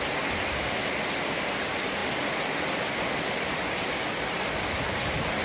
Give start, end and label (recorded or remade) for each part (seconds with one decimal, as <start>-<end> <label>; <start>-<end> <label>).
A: 0.0-5.4 recorded